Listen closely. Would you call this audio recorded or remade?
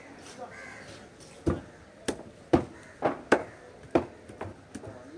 recorded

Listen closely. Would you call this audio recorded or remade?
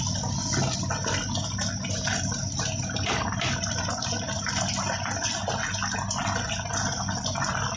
recorded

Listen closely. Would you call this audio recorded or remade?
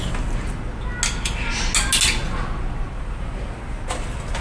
recorded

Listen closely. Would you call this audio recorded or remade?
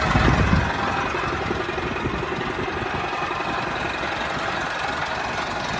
recorded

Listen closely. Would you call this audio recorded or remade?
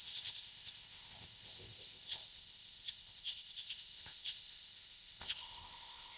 remade